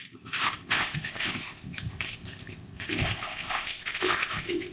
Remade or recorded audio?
remade